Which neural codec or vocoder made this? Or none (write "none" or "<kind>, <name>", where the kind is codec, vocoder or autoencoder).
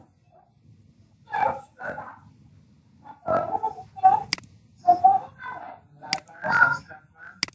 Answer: none